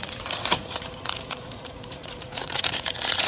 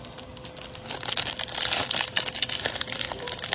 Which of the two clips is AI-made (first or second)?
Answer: first